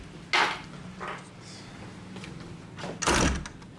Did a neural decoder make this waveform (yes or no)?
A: no